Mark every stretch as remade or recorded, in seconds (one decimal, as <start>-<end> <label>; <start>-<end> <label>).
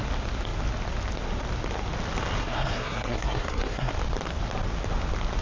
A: 0.0-2.4 recorded; 2.4-3.9 remade; 3.9-5.4 recorded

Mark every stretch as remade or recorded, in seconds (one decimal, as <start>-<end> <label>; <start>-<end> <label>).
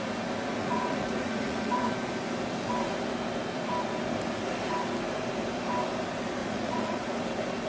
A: 0.0-0.6 recorded; 0.6-1.9 remade; 1.9-6.4 recorded; 6.4-7.2 remade; 7.2-7.7 recorded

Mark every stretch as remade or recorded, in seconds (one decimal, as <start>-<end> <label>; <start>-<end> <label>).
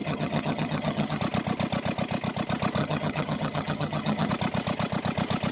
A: 0.0-1.2 remade; 1.2-2.8 recorded; 2.8-4.3 remade; 4.3-5.5 recorded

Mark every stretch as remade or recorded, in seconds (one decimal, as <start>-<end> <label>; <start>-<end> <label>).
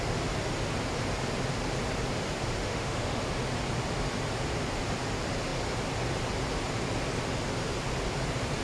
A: 0.0-2.6 recorded; 2.6-3.2 remade; 3.2-8.6 recorded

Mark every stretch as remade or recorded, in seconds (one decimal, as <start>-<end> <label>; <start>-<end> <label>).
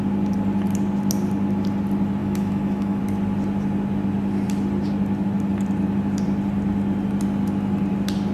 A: 0.0-2.2 recorded; 2.2-3.0 remade; 3.0-8.3 recorded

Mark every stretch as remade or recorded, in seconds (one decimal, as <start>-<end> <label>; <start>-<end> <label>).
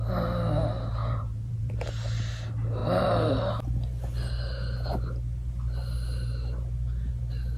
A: 0.0-1.0 recorded; 1.0-1.7 remade; 1.7-7.6 recorded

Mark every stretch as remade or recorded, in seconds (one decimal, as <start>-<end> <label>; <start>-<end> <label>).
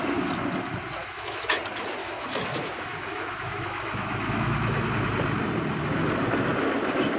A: 0.0-1.0 recorded; 1.0-1.6 remade; 1.6-2.0 recorded; 2.0-4.9 remade; 4.9-7.2 recorded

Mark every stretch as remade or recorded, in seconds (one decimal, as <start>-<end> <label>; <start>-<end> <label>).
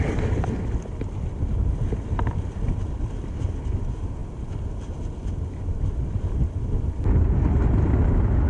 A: 0.0-8.5 recorded